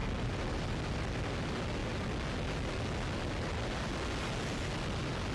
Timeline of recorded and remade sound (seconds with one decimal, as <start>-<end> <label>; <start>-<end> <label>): 0.0-5.3 recorded